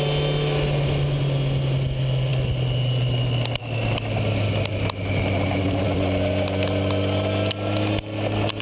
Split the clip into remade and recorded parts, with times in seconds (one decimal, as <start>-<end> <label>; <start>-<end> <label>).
0.0-8.6 recorded